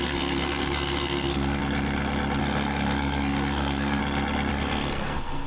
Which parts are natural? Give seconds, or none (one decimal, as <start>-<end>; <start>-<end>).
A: 1.6-2.4; 4.0-4.5